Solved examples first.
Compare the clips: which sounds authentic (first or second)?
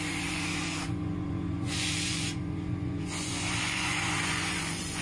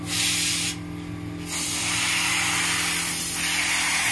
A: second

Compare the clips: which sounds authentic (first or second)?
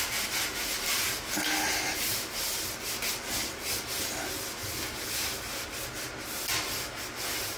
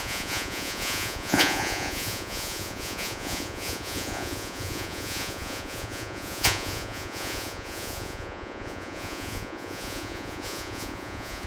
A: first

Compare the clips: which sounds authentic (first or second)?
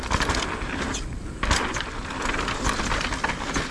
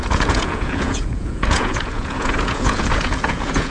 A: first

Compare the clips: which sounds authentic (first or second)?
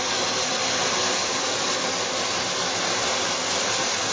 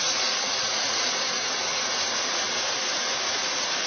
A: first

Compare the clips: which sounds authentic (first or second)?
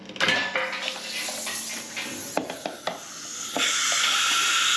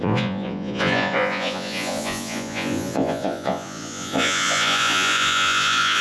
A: first